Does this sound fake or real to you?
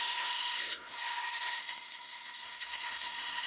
fake